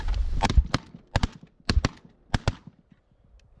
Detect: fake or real real